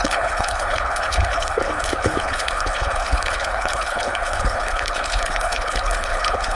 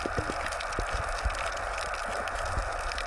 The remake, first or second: first